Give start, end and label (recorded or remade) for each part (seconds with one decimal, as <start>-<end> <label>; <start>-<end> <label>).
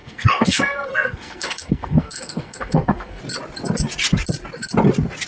0.0-3.2 remade; 3.2-5.3 recorded